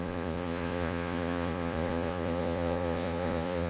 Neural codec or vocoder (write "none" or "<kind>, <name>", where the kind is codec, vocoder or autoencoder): vocoder, Vocos